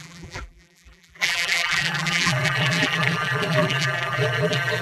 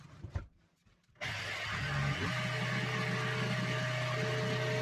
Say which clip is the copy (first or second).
first